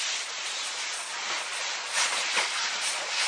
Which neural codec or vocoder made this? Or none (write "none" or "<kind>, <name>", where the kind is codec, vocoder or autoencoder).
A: vocoder, Vocos